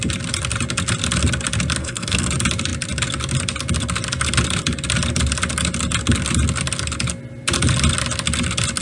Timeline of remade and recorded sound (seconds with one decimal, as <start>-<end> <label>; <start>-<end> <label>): 0.0-1.8 recorded; 1.8-2.3 remade; 2.3-8.8 recorded